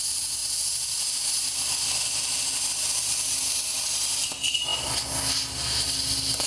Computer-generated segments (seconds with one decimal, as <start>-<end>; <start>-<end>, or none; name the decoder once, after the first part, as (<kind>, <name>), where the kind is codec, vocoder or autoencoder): none